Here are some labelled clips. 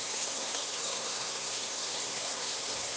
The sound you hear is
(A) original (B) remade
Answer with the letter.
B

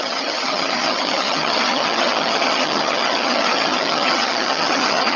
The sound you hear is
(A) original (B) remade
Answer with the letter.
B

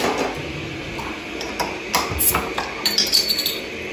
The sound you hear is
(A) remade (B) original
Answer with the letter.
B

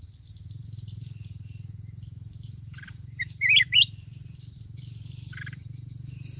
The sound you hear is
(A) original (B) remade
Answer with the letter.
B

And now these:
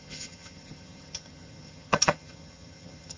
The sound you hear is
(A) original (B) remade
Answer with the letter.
B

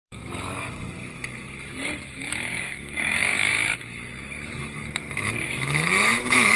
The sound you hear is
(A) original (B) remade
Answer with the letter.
B